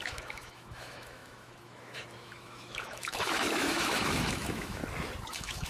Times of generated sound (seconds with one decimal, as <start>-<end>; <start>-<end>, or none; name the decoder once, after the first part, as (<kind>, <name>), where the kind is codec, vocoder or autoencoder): 0.0-4.8 (autoencoder, DAC-VAE); 5.3-5.7